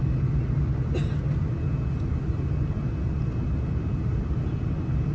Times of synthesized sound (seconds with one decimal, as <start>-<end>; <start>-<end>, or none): none